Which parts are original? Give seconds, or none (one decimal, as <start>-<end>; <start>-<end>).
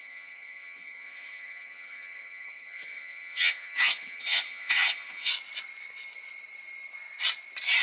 5.3-7.8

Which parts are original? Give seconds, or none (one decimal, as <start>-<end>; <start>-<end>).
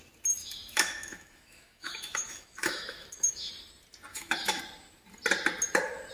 0.0-0.4; 3.5-4.1; 4.6-6.1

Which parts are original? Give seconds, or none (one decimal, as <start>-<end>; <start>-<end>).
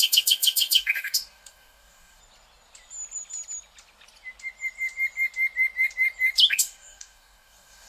2.2-6.5